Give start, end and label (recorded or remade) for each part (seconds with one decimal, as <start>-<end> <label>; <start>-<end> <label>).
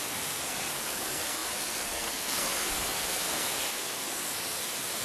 0.0-5.0 remade